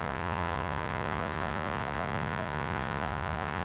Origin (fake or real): fake